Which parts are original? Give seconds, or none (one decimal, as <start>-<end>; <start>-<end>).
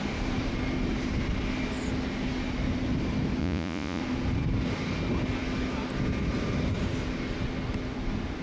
0.0-3.4; 4.0-8.4